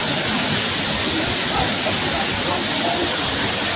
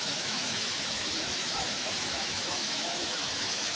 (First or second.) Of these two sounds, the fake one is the second